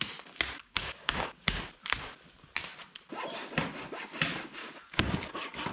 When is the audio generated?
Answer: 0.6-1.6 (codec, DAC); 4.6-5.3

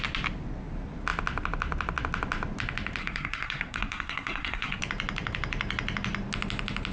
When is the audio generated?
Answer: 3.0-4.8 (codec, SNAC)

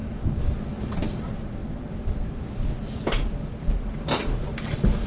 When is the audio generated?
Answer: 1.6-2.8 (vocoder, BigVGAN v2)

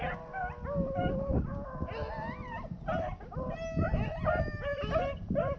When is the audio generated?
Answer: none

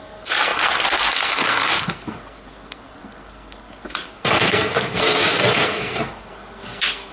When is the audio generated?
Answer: 0.0-7.1 (codec, SNAC)

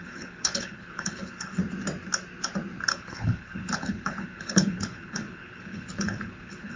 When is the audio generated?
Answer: 0.0-1.6 (codec, HILCodec); 2.9-6.8